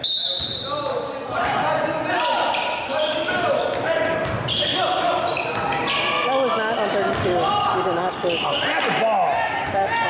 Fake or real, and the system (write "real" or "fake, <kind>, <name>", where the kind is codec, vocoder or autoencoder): real